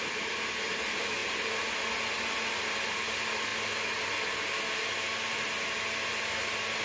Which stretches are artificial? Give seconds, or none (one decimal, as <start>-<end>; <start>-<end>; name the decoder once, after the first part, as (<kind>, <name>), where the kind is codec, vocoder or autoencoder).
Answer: none